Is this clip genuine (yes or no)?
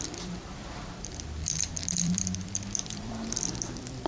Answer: no